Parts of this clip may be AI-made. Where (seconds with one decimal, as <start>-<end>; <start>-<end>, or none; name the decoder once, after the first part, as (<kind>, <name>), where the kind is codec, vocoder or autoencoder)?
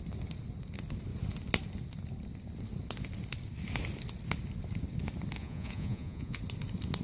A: 5.4-6.4 (vocoder, Vocos)